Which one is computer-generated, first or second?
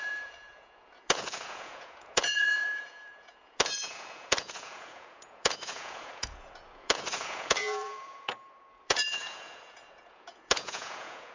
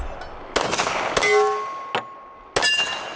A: first